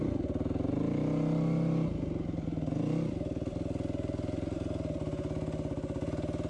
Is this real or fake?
real